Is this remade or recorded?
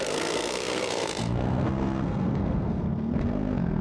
remade